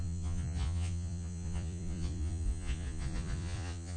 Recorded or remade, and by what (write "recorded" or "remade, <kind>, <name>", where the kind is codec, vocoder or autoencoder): remade, vocoder, Vocos